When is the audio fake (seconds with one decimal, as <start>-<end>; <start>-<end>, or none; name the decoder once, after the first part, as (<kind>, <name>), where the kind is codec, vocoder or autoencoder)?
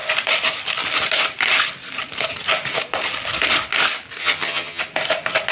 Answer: 4.2-4.8 (vocoder, HiFi-GAN)